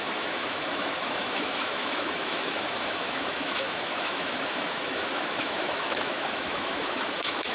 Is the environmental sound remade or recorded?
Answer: remade